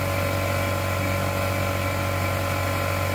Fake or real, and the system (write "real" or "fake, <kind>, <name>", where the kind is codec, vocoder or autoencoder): real